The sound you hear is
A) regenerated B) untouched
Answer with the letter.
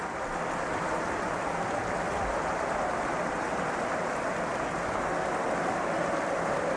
B